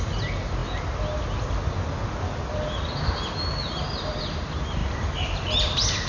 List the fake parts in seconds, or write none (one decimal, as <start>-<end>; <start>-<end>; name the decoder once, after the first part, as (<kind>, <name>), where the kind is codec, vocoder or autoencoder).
none